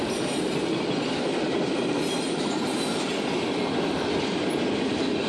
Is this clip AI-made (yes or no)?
no